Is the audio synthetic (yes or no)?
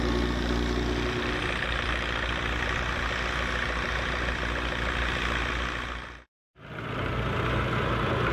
no